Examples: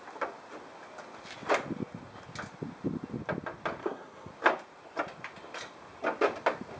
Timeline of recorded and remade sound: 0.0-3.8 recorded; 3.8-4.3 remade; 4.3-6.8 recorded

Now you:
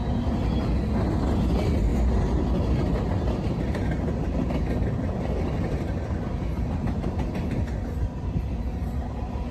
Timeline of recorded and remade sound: 0.0-9.5 recorded

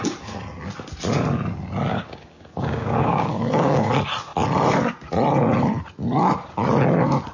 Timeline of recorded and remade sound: 0.0-1.9 recorded; 1.9-3.9 remade; 3.9-7.3 recorded

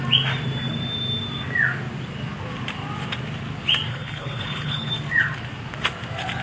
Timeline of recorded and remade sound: 0.0-3.9 recorded; 3.9-4.9 remade; 4.9-6.4 recorded

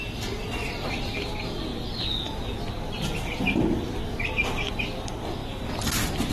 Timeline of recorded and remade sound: 0.0-6.3 recorded

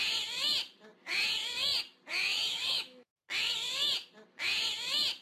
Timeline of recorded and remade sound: 0.0-2.5 recorded; 2.5-3.2 remade; 3.2-5.2 recorded

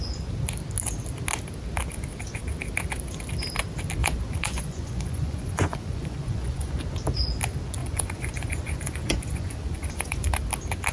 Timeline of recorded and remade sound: 0.0-4.0 recorded; 4.0-6.8 remade; 6.8-7.8 recorded; 7.8-10.3 remade; 10.3-10.9 recorded

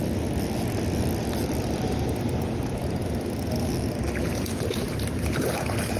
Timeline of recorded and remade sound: 0.0-6.0 recorded